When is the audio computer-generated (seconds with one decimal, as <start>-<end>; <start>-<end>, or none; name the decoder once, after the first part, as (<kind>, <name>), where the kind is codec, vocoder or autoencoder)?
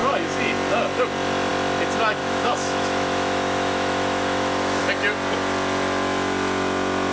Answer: 2.2-4.8 (autoencoder, DAC-VAE)